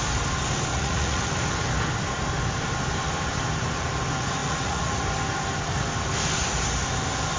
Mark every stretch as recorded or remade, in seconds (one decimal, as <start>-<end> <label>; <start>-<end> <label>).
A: 0.0-0.7 recorded; 0.7-1.3 remade; 1.3-4.4 recorded; 4.4-5.0 remade; 5.0-7.4 recorded